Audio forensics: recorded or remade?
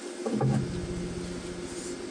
recorded